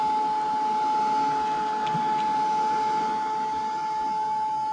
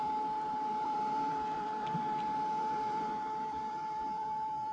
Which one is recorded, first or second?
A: first